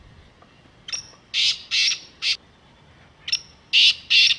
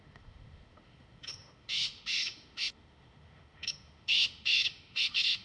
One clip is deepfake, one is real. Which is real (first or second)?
first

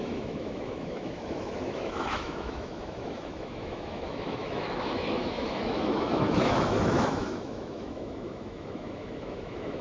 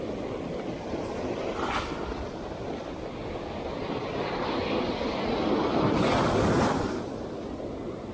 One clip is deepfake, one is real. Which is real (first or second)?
second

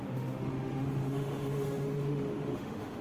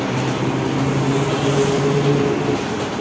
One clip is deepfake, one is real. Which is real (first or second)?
second